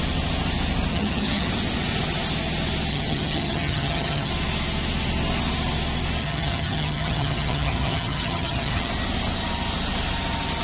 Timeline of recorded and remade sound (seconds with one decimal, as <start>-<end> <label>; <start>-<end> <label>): 0.0-0.9 recorded; 0.9-1.5 remade; 1.5-2.9 recorded; 2.9-4.3 remade; 4.3-6.2 recorded; 6.2-8.9 remade; 8.9-10.6 recorded